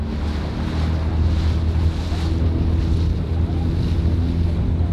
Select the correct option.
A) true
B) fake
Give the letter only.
A